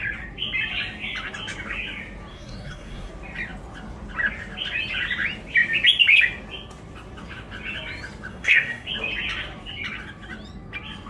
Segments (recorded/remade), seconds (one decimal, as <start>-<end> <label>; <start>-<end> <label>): 0.0-2.3 recorded; 2.3-3.1 remade; 3.1-8.3 recorded; 8.3-8.9 remade; 8.9-11.1 recorded